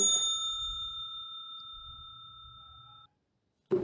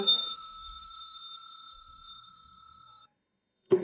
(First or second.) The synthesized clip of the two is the second